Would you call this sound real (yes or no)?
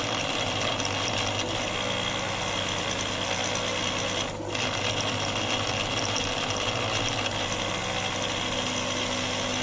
yes